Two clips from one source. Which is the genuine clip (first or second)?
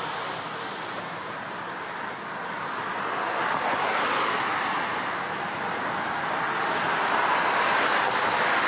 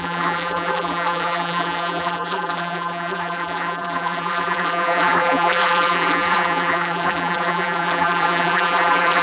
first